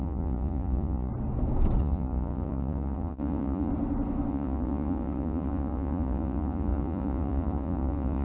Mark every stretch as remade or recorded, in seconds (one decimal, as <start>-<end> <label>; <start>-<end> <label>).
0.0-1.1 remade; 1.1-1.8 recorded; 1.8-3.7 remade; 3.7-4.3 recorded; 4.3-8.2 remade